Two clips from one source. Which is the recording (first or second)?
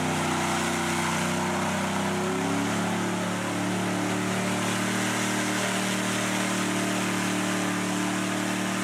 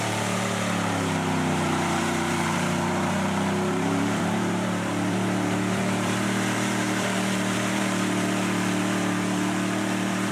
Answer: first